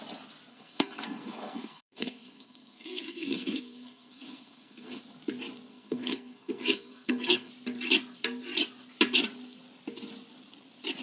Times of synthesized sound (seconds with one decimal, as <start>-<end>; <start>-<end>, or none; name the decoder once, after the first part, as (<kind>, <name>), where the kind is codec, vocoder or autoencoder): 0.5-5.0 (codec, SNAC); 5.7-7.5